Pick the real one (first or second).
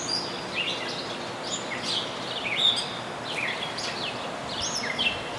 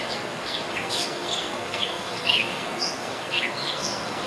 first